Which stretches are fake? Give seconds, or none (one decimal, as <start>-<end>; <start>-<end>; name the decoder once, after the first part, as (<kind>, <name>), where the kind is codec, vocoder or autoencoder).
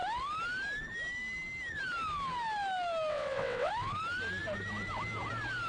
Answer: 3.1-3.7 (vocoder, WaveNeXt)